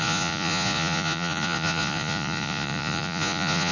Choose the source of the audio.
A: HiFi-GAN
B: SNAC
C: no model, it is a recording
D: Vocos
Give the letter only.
D